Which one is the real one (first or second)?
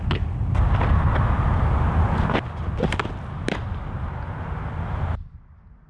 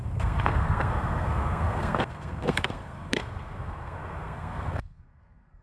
first